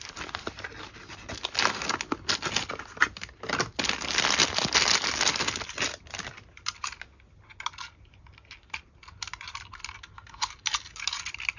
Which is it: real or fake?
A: real